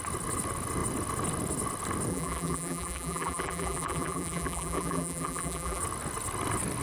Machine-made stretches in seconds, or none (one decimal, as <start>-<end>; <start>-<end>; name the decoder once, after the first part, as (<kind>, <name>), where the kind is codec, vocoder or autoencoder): 2.1-5.8 (vocoder, BigVGAN v2)